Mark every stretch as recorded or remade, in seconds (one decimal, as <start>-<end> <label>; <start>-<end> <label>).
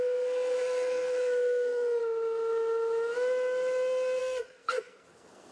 0.0-2.0 remade; 2.0-4.2 recorded; 4.2-5.5 remade